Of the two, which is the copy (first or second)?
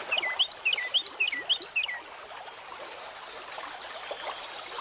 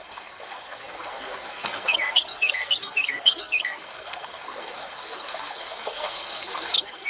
second